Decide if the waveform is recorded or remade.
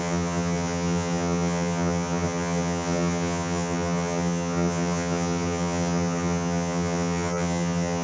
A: remade